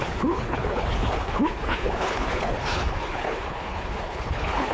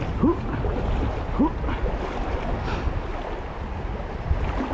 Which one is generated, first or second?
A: first